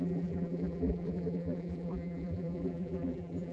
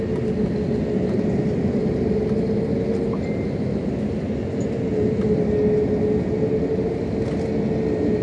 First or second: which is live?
second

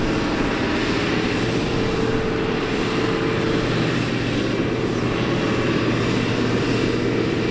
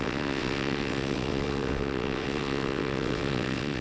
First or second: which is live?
first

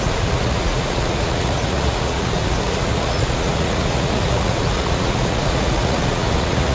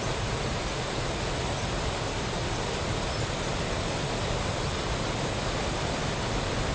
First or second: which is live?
second